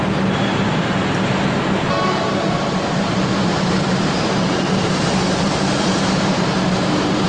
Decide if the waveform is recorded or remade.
remade